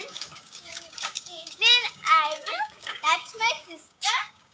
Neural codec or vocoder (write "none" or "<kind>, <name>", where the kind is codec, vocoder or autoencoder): codec, DAC